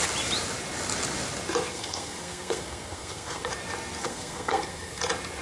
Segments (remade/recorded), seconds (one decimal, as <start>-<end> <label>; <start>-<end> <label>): 0.0-1.7 recorded; 1.7-3.5 remade; 3.5-4.0 recorded; 4.0-5.0 remade; 5.0-5.4 recorded